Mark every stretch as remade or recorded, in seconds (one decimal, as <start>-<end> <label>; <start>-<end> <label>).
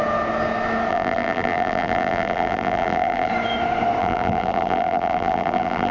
0.0-0.9 recorded; 0.9-3.3 remade; 3.3-4.0 recorded; 4.0-5.9 remade